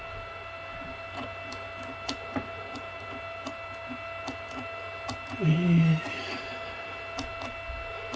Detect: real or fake real